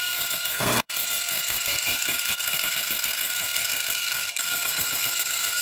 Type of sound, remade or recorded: remade